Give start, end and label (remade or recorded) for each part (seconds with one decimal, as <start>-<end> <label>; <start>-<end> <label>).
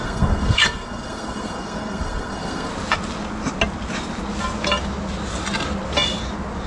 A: 0.0-2.7 remade; 2.7-6.7 recorded